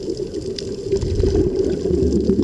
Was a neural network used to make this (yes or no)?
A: no